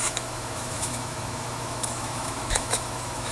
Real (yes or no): no